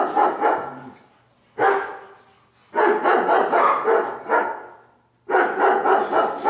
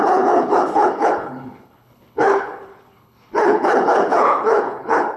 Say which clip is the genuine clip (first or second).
first